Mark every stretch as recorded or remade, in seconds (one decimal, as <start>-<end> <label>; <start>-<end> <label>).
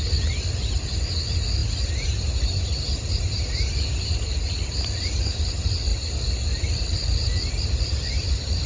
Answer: 0.0-1.6 recorded; 1.6-4.5 remade; 4.5-8.7 recorded